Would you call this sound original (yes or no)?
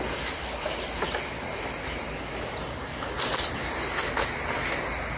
yes